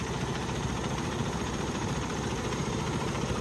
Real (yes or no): no